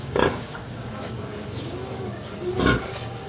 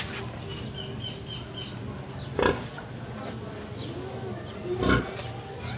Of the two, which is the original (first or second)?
second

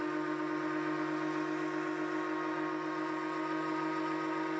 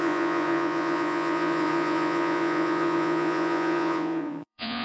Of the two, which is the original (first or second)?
first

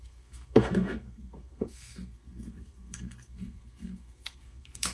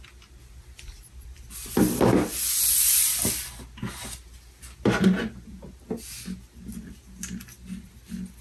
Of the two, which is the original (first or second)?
second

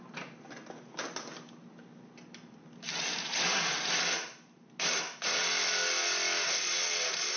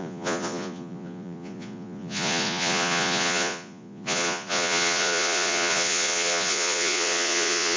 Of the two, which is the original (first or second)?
first